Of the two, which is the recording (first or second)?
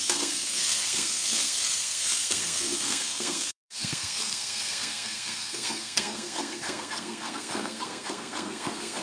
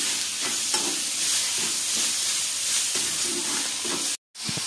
second